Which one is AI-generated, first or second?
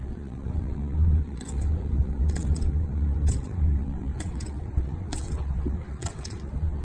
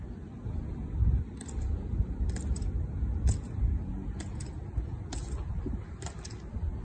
first